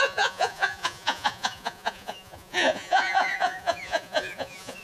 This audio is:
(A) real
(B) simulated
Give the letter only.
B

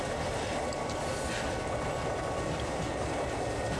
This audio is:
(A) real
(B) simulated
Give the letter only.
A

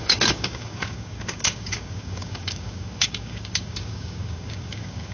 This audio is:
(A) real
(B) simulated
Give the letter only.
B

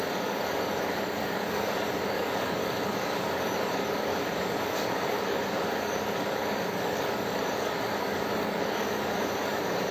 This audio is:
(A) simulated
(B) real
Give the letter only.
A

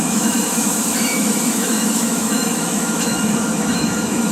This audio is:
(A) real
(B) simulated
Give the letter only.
B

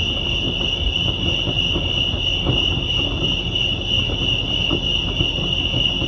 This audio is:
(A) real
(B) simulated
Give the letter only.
A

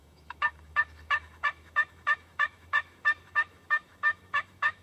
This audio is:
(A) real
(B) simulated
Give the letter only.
B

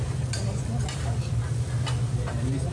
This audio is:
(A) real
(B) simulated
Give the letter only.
A